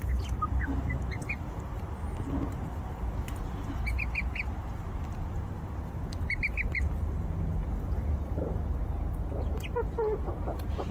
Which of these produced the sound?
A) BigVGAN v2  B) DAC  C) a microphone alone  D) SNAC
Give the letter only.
C